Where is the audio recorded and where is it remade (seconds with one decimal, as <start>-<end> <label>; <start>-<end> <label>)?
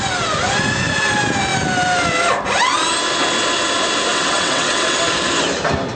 0.0-4.1 recorded; 4.1-5.0 remade; 5.0-6.0 recorded